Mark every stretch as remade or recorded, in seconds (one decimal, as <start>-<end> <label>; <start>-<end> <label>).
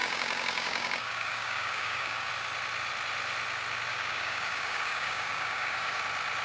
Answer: 0.0-2.3 remade; 2.3-3.9 recorded; 3.9-6.0 remade; 6.0-6.4 recorded